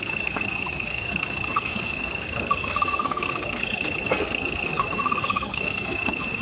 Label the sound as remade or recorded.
remade